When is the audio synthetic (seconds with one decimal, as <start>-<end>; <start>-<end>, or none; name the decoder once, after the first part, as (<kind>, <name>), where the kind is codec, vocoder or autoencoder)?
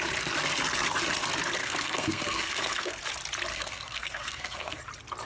1.6-3.0 (codec, SNAC); 3.5-4.8